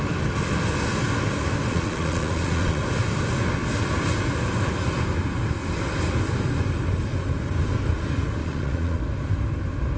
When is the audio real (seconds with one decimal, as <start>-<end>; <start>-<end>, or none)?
0.0-1.7; 2.8-8.4; 9.0-10.0